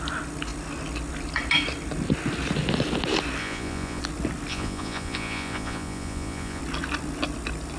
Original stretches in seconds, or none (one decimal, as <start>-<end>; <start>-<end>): 0.0-3.4; 4.0-4.5; 6.6-7.8